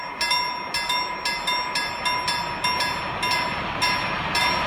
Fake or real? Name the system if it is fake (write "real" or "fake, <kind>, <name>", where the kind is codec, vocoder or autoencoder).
real